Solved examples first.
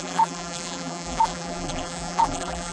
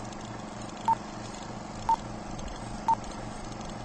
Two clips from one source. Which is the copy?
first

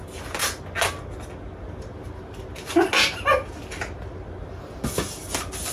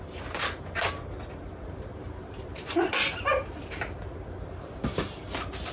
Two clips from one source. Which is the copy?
second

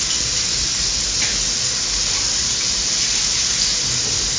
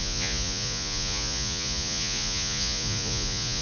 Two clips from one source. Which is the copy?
second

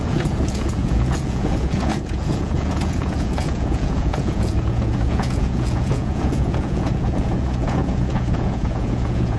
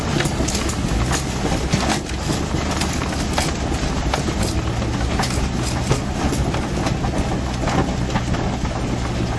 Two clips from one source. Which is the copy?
first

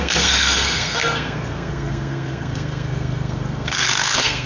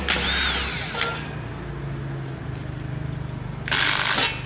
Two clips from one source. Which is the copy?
first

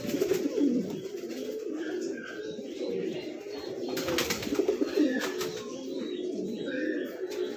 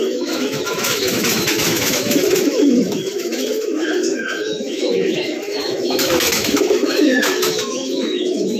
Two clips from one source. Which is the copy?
second